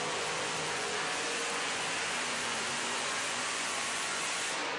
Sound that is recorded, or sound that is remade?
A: remade